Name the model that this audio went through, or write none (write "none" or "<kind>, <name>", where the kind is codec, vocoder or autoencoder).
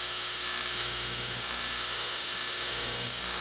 autoencoder, DAC-VAE